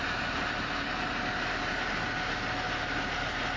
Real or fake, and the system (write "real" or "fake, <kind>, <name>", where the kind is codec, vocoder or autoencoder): real